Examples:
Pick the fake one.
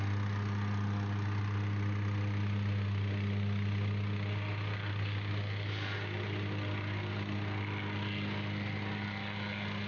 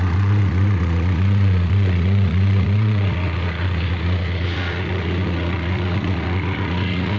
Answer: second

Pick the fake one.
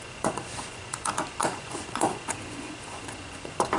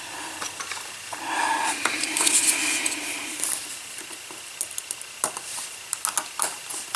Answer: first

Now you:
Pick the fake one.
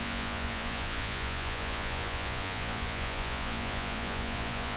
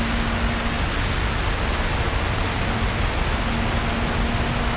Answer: first